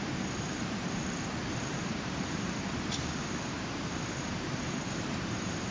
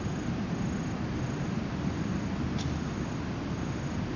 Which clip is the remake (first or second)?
first